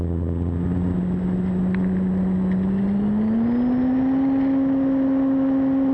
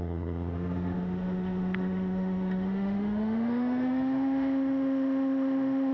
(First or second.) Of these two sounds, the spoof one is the second